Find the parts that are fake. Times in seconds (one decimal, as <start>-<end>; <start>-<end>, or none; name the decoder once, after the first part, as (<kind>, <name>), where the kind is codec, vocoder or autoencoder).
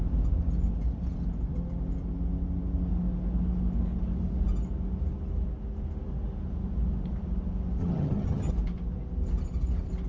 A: 7.8-8.5 (vocoder, HiFi-GAN)